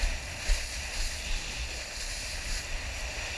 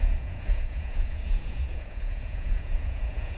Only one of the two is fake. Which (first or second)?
second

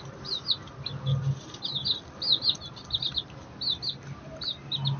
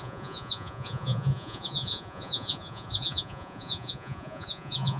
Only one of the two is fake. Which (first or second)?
second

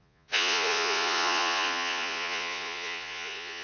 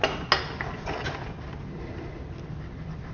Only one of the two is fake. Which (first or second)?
first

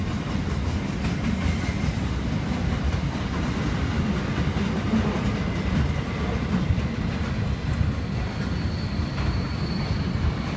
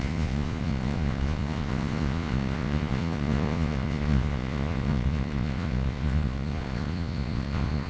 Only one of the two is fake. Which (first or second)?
second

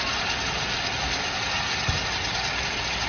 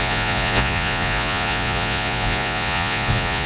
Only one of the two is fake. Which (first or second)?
second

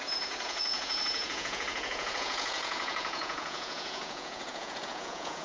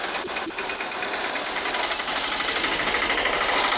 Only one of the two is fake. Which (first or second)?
first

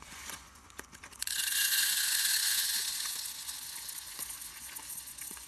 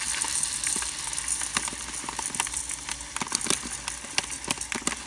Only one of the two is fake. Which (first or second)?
first